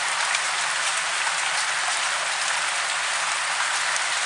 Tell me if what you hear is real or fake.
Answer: real